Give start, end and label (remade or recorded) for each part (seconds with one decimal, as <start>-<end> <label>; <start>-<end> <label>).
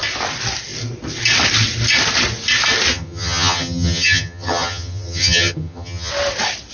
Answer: 0.0-2.9 recorded; 2.9-6.1 remade; 6.1-6.7 recorded